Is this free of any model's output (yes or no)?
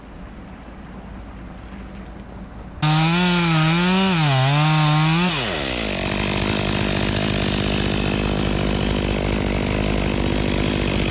yes